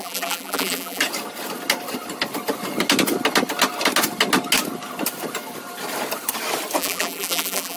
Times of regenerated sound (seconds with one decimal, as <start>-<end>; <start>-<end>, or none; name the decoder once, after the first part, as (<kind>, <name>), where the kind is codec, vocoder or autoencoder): 0.0-1.0 (vocoder, BigVGAN v2); 6.8-7.8